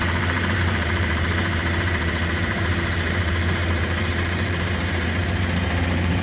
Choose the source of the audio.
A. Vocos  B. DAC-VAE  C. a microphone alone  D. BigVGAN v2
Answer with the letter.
D